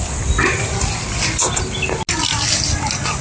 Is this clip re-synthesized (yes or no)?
no